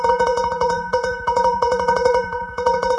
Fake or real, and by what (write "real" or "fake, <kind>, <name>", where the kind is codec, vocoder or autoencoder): fake, vocoder, Vocos